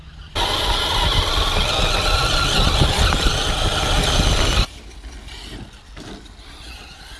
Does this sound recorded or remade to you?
recorded